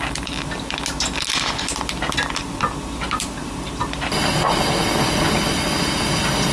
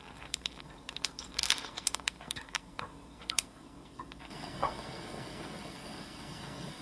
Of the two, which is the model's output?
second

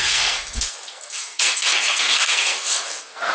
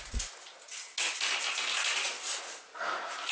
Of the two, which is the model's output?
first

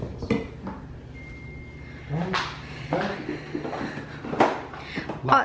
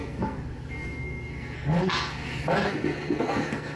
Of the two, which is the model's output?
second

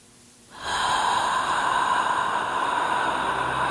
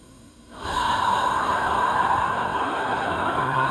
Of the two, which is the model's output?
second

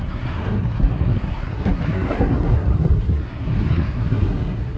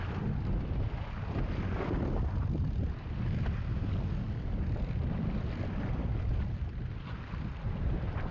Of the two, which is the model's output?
first